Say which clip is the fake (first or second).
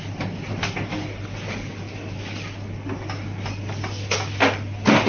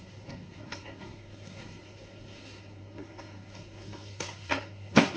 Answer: second